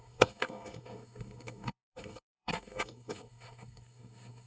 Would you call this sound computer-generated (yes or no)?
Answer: yes